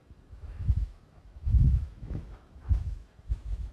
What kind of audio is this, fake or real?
fake